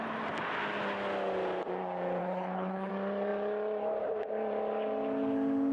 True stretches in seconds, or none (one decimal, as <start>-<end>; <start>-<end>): 0.0-2.2; 2.9-5.7